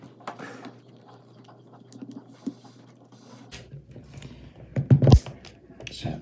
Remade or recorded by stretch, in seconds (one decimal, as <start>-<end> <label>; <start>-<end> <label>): 0.0-6.2 recorded